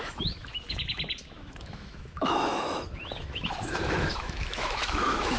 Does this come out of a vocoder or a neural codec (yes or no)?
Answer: yes